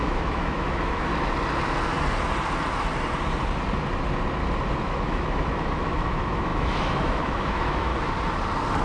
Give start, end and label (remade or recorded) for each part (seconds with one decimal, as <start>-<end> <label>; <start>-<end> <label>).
0.0-1.1 remade; 1.1-4.8 recorded; 4.8-7.9 remade; 7.9-8.8 recorded